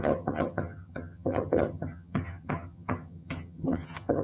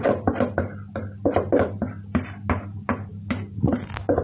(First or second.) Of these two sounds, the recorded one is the second